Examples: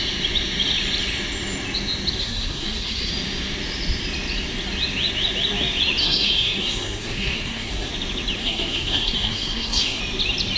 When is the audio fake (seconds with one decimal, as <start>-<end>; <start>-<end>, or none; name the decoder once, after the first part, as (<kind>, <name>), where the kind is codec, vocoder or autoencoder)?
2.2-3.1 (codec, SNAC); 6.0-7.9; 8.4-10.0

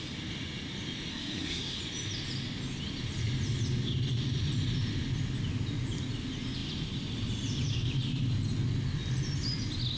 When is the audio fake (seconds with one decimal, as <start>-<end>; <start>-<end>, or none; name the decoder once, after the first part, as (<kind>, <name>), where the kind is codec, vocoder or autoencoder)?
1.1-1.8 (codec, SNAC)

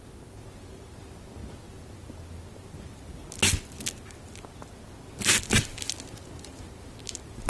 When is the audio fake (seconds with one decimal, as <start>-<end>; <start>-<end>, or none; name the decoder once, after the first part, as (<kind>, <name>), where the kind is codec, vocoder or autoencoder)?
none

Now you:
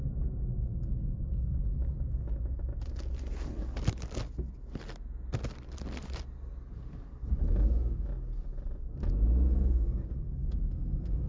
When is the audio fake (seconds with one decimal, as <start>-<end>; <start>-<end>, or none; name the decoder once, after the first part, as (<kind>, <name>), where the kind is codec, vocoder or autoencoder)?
9.5-11.3 (codec, SNAC)

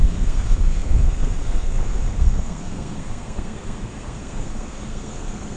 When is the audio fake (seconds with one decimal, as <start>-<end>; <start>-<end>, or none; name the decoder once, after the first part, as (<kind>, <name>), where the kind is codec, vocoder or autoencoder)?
0.0-5.6 (codec, SNAC)

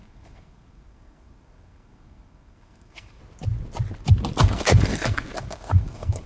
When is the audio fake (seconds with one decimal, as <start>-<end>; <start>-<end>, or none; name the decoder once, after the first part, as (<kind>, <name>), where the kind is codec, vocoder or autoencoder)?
0.0-3.2 (codec, SNAC); 4.4-6.3

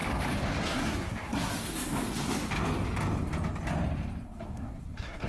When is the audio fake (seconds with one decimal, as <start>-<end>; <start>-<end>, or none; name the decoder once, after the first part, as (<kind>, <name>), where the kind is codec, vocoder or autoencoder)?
0.6-1.5 (codec, SNAC); 4.2-5.3

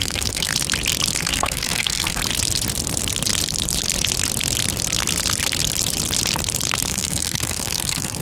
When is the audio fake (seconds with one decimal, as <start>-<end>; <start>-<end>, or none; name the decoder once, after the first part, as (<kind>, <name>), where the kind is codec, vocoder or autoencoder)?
0.0-0.5 (codec, SNAC); 1.2-2.2; 6.9-8.2